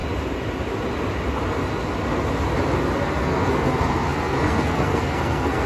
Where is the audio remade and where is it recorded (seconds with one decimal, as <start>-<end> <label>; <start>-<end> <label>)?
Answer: 0.0-3.2 recorded; 3.2-5.7 remade